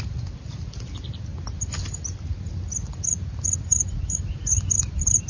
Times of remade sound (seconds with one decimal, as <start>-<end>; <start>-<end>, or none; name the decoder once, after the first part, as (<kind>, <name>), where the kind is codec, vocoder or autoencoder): none